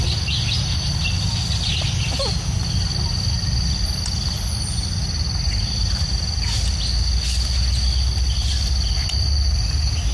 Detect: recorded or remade recorded